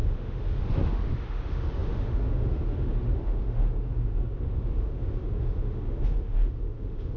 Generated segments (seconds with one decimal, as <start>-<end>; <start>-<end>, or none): 0.0-7.2